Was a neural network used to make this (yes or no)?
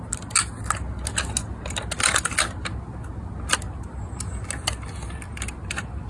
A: no